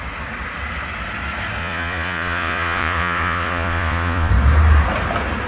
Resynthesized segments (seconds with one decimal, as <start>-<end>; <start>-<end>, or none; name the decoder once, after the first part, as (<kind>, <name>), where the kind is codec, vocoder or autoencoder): 1.6-4.3 (vocoder, Vocos)